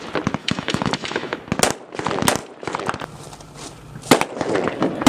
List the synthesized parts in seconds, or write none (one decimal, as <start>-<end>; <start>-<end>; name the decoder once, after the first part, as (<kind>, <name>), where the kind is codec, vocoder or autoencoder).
0.4-1.4 (autoencoder, DAC-VAE)